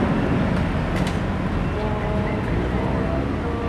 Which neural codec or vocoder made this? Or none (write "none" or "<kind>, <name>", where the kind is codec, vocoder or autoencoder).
none